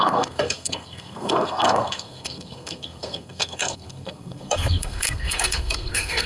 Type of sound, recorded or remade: remade